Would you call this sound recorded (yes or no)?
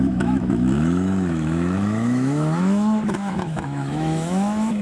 no